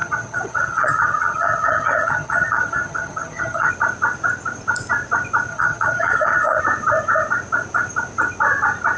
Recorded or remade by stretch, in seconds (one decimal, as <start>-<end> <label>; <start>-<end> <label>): 0.0-3.7 remade; 3.7-5.5 recorded; 5.5-6.6 remade; 6.6-9.0 recorded